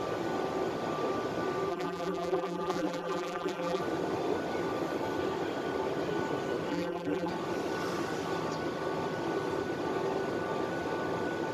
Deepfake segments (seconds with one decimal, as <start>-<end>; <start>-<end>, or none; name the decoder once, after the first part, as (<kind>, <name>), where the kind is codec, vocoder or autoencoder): 1.7-3.8 (vocoder, BigVGAN v2); 6.7-7.3